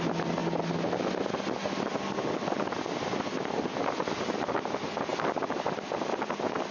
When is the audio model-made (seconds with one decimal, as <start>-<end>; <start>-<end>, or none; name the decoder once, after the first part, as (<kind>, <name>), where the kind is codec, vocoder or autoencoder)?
none